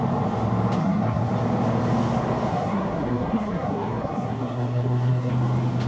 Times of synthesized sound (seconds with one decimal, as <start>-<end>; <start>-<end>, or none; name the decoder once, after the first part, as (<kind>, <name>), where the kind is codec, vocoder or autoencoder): 0.8-1.3 (codec, SNAC); 2.5-5.3